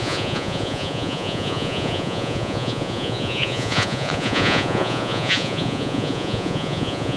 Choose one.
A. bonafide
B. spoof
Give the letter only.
B